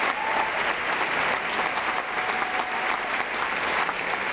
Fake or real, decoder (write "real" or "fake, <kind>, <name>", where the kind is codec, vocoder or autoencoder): real